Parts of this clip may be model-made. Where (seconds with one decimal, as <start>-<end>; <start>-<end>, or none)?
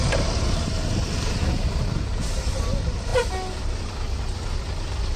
none